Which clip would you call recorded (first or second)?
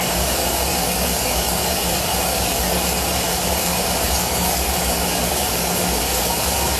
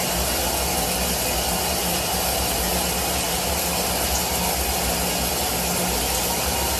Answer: second